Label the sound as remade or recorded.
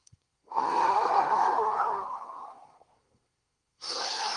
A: remade